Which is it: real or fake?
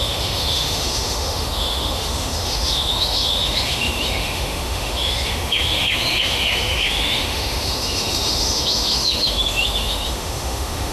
fake